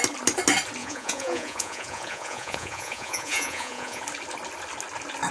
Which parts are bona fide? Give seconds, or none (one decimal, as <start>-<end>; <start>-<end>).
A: 0.0-0.8; 4.0-5.3